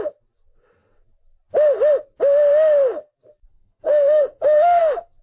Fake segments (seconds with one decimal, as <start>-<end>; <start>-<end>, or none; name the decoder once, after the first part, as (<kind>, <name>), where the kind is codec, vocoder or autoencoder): 3.5-4.8 (codec, SNAC)